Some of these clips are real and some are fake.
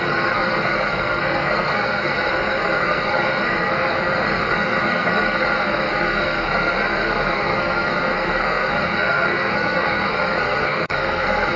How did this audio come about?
fake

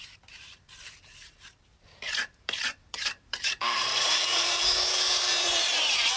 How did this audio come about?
fake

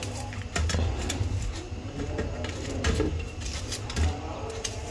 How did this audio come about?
real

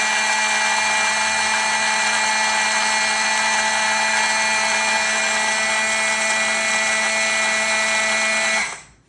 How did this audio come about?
real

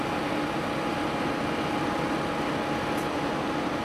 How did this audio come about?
real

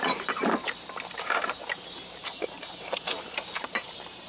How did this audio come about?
fake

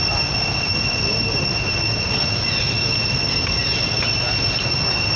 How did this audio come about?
real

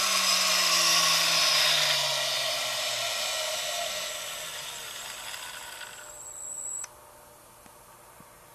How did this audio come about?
real